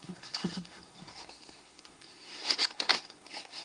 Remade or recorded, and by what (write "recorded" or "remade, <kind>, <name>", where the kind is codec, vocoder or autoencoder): remade, codec, SNAC